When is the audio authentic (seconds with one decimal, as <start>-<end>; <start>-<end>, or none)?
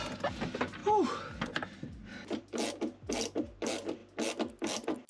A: 0.0-5.1